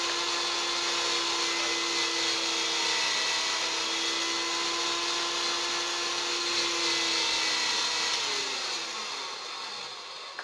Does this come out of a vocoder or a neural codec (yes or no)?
no